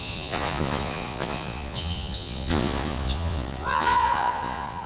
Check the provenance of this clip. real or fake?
fake